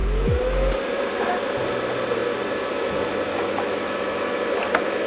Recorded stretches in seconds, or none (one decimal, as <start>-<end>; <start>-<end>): 0.0-3.3